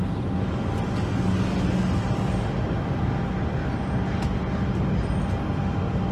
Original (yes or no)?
yes